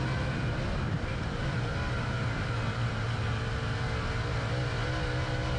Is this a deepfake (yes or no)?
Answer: no